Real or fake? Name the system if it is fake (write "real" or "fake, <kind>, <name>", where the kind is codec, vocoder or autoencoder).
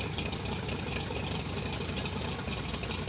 real